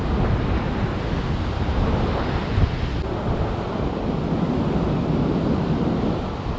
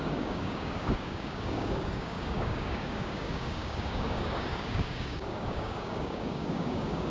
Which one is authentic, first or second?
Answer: first